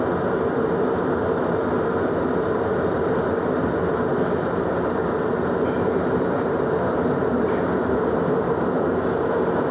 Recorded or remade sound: recorded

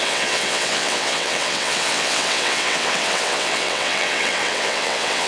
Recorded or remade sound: remade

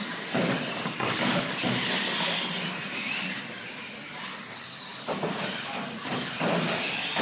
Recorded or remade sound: recorded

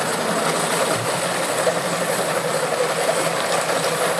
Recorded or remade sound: recorded